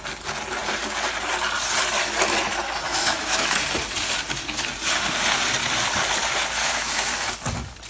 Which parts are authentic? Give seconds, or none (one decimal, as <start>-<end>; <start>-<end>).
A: 0.0-2.9; 3.5-6.6; 7.1-7.9